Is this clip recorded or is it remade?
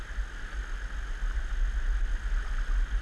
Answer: recorded